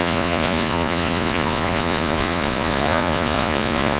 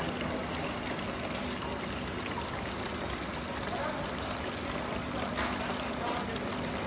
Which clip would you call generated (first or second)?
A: first